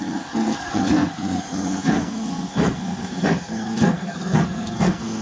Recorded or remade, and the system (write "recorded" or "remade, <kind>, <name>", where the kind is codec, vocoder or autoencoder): remade, codec, SNAC